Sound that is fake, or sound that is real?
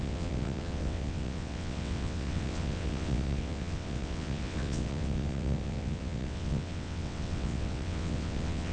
fake